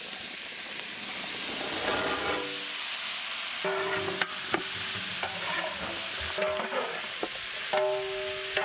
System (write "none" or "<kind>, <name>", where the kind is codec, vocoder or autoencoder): none